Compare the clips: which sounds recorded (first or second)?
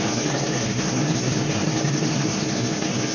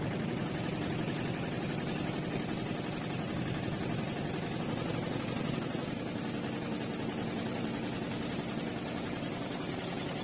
second